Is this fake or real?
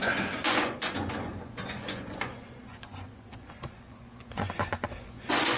fake